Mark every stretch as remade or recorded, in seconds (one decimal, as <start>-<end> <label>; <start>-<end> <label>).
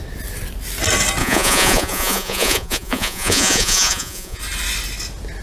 0.0-1.2 recorded; 1.2-4.4 remade; 4.4-5.4 recorded